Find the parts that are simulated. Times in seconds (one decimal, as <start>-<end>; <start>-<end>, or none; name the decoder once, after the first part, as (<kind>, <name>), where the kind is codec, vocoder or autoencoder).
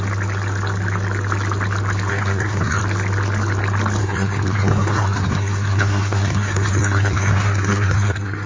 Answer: 2.1-2.8 (codec, SNAC); 4.0-8.5